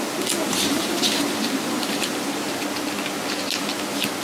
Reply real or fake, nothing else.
real